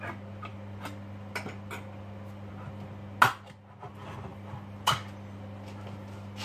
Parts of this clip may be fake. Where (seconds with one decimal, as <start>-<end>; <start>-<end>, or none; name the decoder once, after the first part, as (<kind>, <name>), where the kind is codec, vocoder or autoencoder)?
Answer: 0.5-2.5 (vocoder, BigVGAN v2); 4.3-6.4